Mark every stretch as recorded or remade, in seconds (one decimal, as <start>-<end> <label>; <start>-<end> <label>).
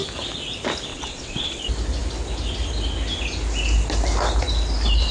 0.0-0.9 recorded; 0.9-1.6 remade; 1.6-5.1 recorded